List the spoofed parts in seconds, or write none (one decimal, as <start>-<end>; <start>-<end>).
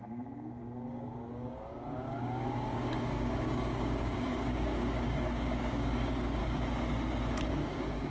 0.0-6.4; 7.5-8.1